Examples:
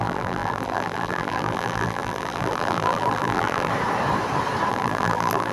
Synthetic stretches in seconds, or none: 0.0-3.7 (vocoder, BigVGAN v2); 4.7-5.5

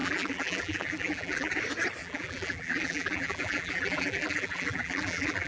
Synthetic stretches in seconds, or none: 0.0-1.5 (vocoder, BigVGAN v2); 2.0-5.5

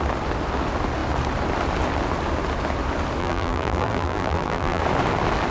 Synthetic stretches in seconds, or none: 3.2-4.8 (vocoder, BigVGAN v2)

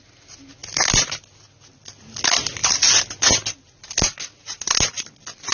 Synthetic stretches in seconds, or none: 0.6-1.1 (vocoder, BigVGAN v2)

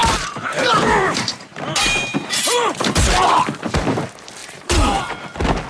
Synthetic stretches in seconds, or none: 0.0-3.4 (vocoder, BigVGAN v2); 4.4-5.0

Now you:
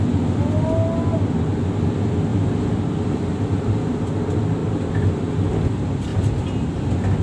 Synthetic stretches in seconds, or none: 2.3-3.7 (vocoder, BigVGAN v2); 4.6-5.3

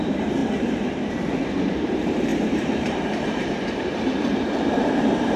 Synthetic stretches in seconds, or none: 0.0-5.4 (vocoder, BigVGAN v2)